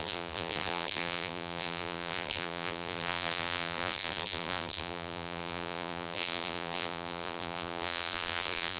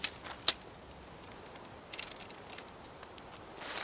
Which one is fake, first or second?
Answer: first